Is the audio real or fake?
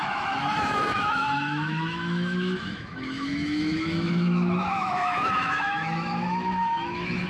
fake